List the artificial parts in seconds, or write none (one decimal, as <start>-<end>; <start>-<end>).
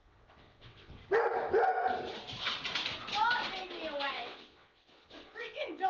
0.0-1.0; 4.1-5.9